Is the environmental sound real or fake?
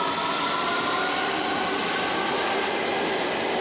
real